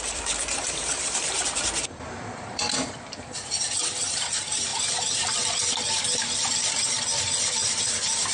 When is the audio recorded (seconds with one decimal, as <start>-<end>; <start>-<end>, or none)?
4.7-6.2